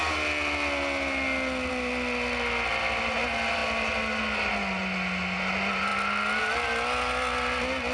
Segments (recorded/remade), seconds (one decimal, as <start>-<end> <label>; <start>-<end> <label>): 0.0-7.9 recorded